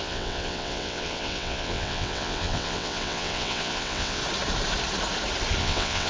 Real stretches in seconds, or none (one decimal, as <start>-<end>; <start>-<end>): 4.2-5.6